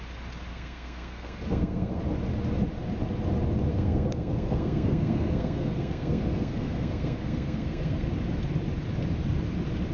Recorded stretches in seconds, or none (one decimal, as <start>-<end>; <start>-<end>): 0.0-0.5; 2.0-3.7; 8.1-9.9